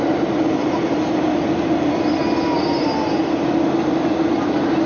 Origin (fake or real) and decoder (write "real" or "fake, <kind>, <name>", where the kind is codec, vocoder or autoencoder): real